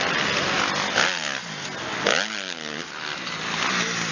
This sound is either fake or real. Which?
real